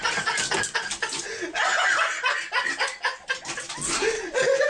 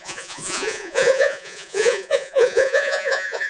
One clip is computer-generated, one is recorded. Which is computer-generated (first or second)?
second